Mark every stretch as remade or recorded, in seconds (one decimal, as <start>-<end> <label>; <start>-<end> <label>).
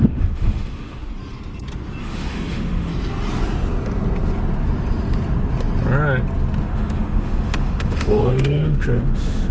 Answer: 0.0-1.1 remade; 1.1-2.0 recorded; 2.0-2.9 remade; 2.9-6.6 recorded; 6.6-9.5 remade